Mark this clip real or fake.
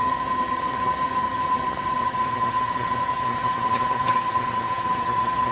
fake